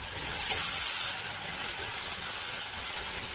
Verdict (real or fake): fake